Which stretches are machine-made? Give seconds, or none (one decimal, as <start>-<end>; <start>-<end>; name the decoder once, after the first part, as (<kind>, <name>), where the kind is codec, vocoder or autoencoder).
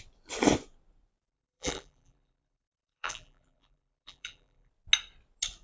1.3-4.7 (vocoder, BigVGAN v2)